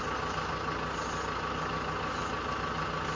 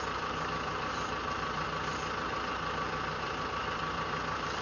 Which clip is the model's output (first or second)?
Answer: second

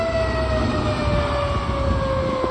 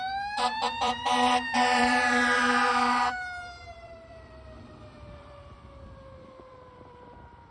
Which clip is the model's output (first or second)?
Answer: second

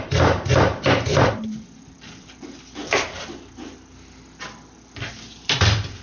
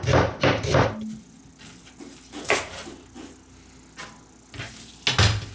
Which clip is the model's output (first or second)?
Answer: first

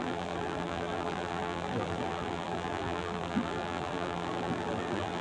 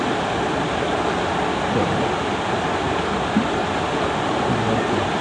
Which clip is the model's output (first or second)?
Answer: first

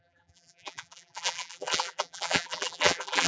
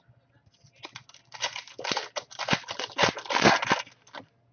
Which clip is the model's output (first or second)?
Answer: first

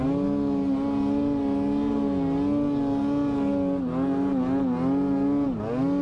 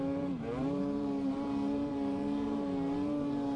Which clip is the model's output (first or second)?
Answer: second